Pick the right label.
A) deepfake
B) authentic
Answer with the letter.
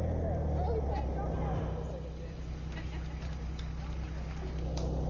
B